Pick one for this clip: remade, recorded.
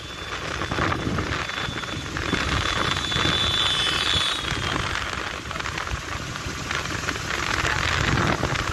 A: recorded